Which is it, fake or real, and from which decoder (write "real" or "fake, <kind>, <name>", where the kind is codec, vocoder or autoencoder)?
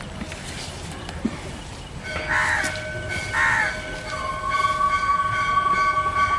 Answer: real